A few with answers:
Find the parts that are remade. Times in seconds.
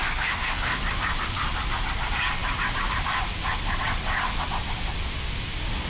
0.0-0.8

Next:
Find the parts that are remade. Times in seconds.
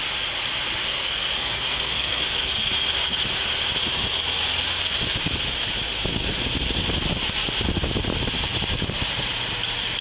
0.9-2.7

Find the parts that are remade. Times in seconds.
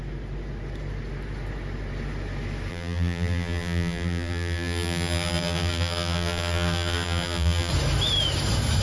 2.7-7.7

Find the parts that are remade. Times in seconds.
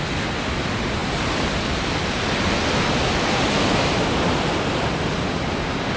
none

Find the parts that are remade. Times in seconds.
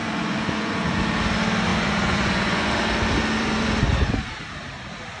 0.0-1.0; 1.7-2.7; 3.4-3.9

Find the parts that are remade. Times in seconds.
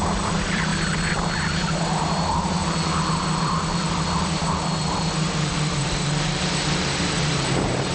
0.0-0.7; 1.2-2.6; 3.4-7.9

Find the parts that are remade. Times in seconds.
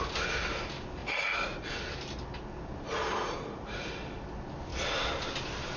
1.0-1.7; 3.2-3.9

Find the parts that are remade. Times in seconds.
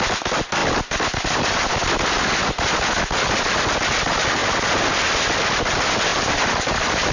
6.1-7.1